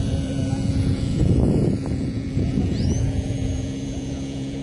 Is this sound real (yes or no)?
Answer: no